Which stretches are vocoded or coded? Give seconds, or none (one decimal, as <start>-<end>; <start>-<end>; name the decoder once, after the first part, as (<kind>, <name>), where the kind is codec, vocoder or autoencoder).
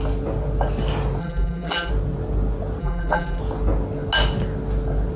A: 1.2-1.9 (vocoder, BigVGAN v2); 2.8-3.4